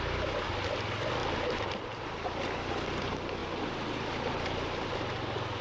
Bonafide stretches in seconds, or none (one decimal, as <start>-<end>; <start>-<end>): 0.0-5.6